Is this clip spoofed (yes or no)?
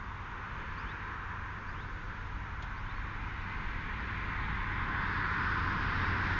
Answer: no